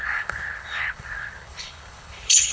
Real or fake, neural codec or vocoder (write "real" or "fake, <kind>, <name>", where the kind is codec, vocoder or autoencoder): fake, codec, HILCodec